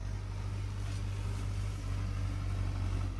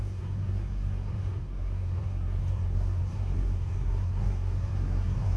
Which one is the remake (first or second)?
second